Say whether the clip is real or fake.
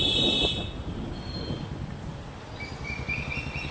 real